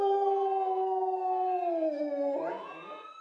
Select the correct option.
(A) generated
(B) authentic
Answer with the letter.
B